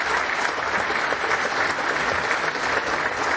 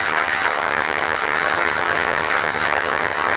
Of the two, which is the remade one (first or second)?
second